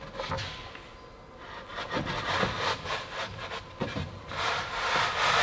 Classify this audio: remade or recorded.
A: recorded